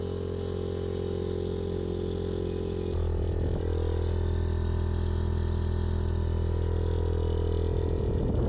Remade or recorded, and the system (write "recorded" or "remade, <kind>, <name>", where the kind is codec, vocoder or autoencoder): recorded